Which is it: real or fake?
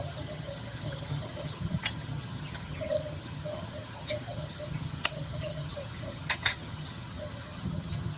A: fake